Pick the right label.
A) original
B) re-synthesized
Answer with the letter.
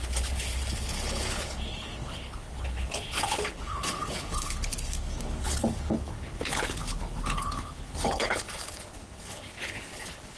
B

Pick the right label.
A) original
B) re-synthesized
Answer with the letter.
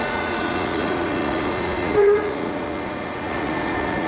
B